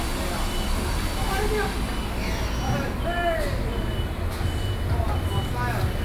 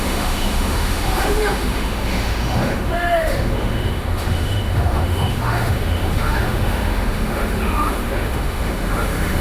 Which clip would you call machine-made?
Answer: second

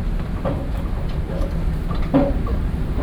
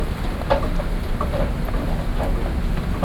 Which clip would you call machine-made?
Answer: first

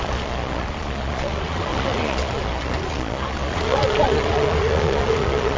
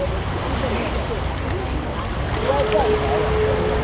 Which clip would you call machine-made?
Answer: first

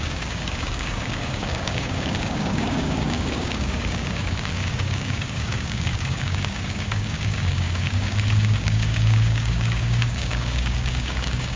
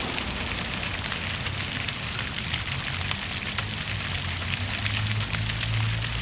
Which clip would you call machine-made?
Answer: first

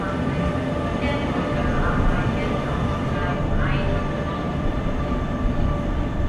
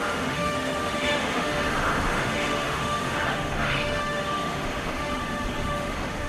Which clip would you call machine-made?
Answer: second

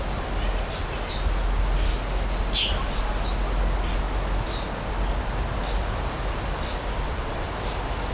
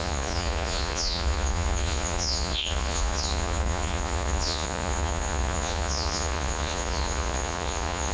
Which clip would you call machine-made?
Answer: second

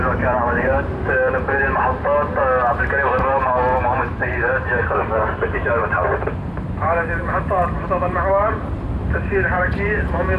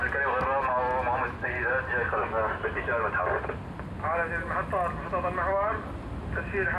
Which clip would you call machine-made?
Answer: first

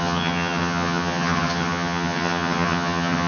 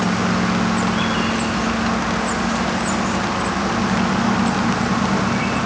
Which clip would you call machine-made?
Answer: first